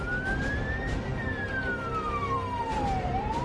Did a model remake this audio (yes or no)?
yes